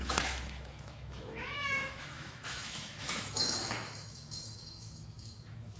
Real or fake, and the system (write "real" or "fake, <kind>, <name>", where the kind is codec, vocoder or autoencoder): fake, autoencoder, DAC-VAE